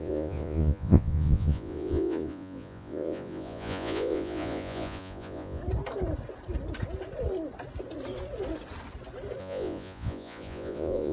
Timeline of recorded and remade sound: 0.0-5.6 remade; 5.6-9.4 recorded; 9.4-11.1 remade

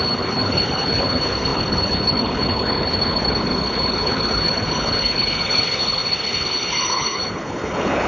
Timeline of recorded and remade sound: 0.0-8.1 remade